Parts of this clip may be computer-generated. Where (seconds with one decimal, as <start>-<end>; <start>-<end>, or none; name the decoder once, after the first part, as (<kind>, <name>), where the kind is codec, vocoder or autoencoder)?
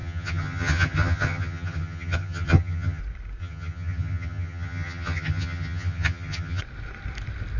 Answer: 0.0-3.0 (vocoder, HiFi-GAN); 3.4-6.6